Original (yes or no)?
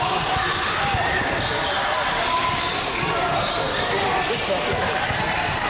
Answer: yes